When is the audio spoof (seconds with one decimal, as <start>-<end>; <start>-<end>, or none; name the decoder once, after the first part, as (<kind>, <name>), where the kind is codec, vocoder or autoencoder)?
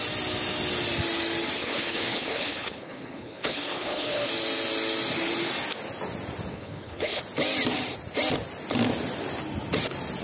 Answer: 1.6-4.3 (codec, HILCodec); 6.5-7.2